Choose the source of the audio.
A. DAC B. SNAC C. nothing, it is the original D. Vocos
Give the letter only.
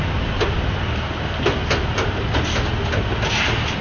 C